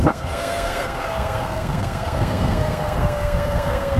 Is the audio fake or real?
fake